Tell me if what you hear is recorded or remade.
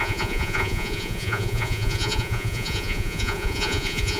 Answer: remade